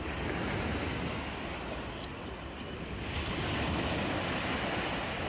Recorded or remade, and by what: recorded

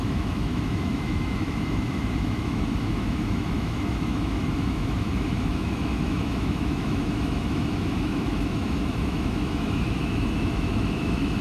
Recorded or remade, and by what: remade, autoencoder, DAC-VAE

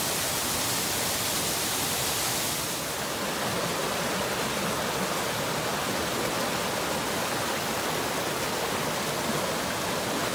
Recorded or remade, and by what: recorded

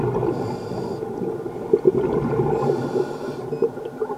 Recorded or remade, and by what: recorded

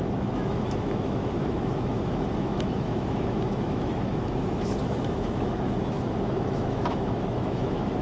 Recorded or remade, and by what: remade, autoencoder, DAC-VAE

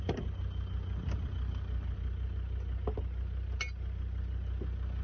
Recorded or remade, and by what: recorded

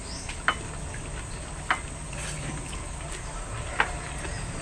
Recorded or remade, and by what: recorded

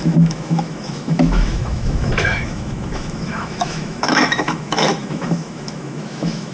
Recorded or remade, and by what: remade, autoencoder, DAC-VAE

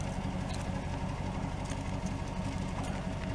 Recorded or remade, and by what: recorded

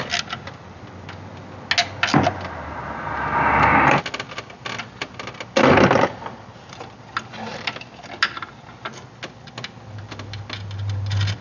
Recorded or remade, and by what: recorded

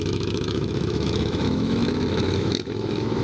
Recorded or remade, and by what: remade, autoencoder, DAC-VAE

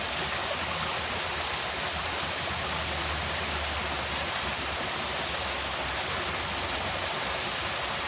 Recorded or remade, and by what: recorded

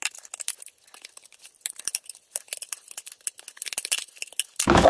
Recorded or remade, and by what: recorded